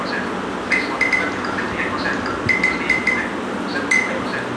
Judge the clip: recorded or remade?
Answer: recorded